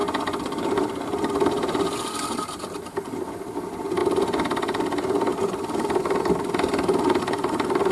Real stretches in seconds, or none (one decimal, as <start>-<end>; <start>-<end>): 3.1-7.9